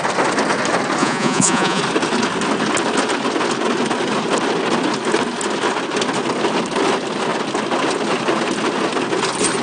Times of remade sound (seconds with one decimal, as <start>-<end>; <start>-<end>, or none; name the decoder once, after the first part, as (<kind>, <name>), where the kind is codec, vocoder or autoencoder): 1.0-1.8 (vocoder, Vocos)